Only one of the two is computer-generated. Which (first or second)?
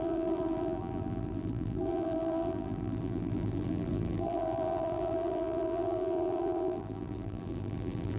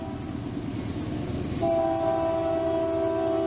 first